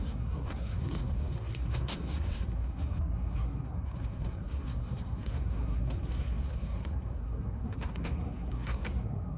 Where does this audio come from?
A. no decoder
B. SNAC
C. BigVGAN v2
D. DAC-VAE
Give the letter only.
B